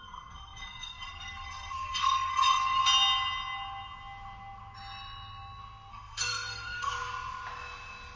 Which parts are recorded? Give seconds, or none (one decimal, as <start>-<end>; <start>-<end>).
2.8-5.9; 6.9-8.2